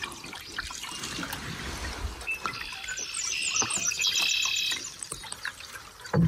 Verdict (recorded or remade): recorded